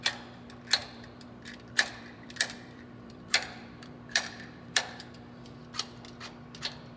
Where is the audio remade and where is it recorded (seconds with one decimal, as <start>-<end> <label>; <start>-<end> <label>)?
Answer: 0.0-0.8 recorded; 0.8-5.0 remade; 5.0-7.0 recorded